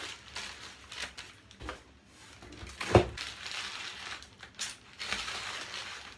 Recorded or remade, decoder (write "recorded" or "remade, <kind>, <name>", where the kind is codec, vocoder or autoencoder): recorded